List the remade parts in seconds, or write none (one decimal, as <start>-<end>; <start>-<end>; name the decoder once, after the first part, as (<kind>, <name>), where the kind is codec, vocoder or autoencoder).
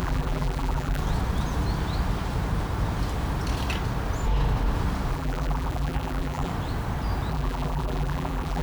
0.0-1.0 (vocoder, BigVGAN v2); 5.1-6.5; 7.3-8.6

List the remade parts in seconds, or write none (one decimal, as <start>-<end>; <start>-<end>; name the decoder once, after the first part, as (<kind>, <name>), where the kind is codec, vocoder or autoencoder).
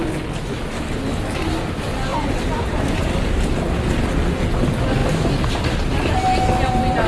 2.1-3.0 (vocoder, BigVGAN v2); 5.0-5.8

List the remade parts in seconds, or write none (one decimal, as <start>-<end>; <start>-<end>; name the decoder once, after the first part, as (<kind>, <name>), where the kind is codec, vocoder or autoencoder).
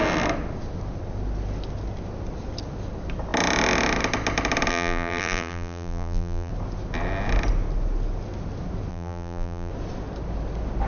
4.7-6.5 (vocoder, BigVGAN v2); 8.9-9.7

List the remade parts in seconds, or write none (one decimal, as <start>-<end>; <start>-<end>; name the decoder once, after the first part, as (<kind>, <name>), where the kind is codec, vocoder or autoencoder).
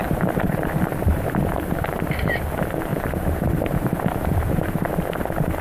0.0-1.9 (vocoder, BigVGAN v2); 2.9-5.0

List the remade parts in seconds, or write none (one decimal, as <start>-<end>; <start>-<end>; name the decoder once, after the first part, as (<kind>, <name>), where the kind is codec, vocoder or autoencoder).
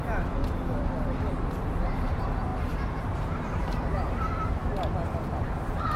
0.0-0.4 (vocoder, BigVGAN v2); 1.3-4.6; 5.4-6.0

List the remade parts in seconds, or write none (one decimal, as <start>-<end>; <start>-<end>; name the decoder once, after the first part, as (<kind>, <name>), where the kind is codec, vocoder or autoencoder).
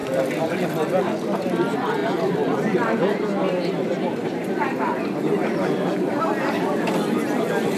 0.0-0.7 (vocoder, BigVGAN v2); 2.0-6.2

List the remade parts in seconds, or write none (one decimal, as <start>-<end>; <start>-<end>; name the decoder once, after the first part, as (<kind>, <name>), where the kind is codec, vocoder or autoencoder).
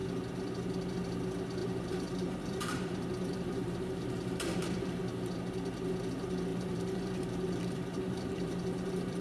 1.6-5.3 (vocoder, BigVGAN v2); 6.5-9.2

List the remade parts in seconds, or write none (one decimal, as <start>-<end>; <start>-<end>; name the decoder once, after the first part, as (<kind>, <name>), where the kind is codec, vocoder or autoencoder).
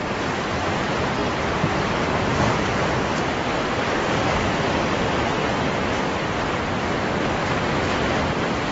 0.0-2.3 (vocoder, BigVGAN v2); 4.0-7.4; 8.2-8.7